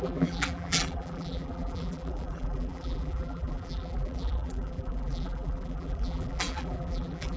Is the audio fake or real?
fake